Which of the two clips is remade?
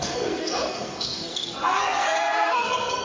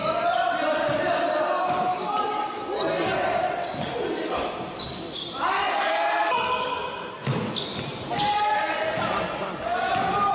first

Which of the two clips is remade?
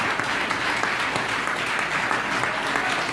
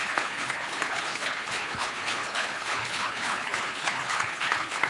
second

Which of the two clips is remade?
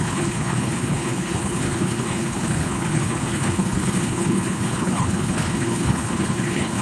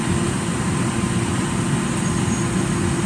first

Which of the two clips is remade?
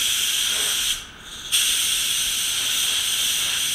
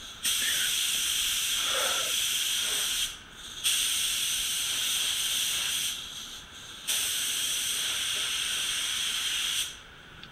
second